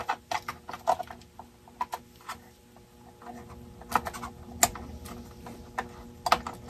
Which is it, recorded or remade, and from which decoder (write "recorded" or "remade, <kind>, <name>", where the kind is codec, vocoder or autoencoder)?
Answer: recorded